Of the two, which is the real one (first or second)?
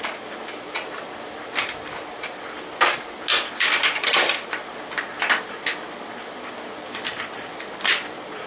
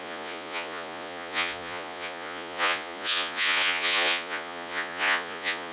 first